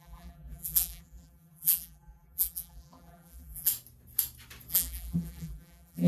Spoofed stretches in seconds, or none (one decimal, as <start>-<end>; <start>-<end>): 0.0-3.7; 4.7-6.1